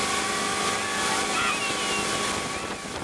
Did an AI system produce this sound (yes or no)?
no